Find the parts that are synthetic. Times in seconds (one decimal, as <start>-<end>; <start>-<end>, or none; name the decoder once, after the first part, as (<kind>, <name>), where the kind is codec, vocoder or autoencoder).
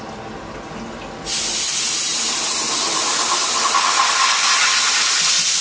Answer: none